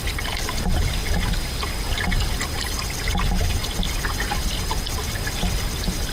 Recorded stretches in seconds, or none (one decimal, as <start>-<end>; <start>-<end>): 0.0-6.1